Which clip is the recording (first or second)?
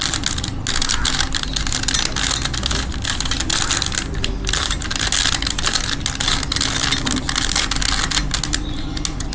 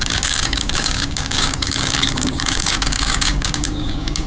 first